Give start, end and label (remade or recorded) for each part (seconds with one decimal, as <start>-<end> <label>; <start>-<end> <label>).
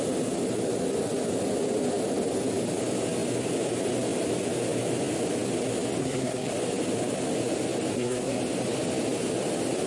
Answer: 0.0-6.0 recorded; 6.0-6.5 remade; 6.5-7.9 recorded; 7.9-8.4 remade; 8.4-9.9 recorded